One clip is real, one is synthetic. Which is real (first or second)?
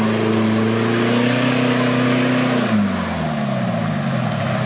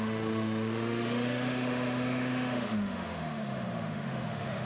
first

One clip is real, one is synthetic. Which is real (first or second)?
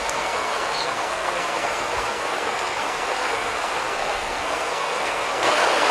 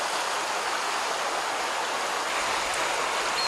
second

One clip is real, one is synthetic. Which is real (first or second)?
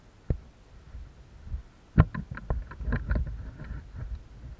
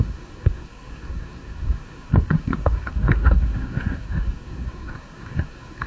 first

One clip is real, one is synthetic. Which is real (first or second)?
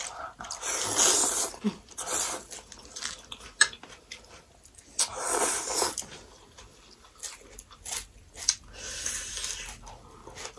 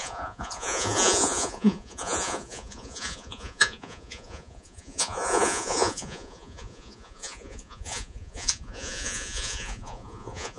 first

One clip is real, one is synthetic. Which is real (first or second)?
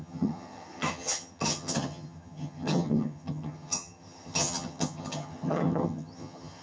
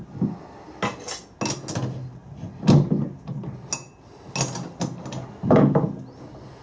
second